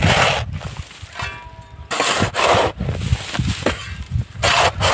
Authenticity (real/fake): real